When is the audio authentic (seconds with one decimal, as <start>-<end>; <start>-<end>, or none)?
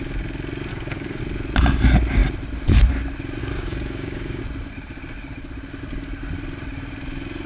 0.0-0.7; 1.2-3.4; 4.4-7.5